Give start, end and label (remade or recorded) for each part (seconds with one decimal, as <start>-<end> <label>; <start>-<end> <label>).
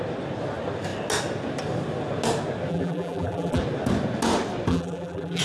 0.0-2.7 recorded; 2.7-3.6 remade; 3.6-4.7 recorded; 4.7-5.4 remade